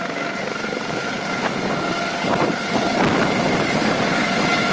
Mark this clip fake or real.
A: real